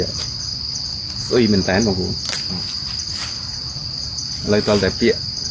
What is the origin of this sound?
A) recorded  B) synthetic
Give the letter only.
A